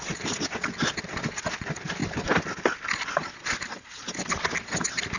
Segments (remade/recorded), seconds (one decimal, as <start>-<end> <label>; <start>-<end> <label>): 0.0-5.2 recorded